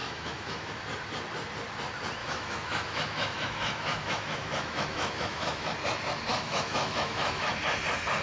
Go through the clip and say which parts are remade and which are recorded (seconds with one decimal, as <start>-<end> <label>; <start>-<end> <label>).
0.0-0.7 remade; 0.7-2.2 recorded; 2.2-5.7 remade; 5.7-6.3 recorded; 6.3-7.5 remade; 7.5-8.2 recorded